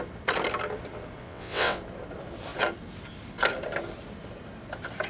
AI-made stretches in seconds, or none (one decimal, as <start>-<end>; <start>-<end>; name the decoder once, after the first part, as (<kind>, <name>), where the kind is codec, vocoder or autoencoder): 1.2-1.8 (vocoder, WaveNeXt)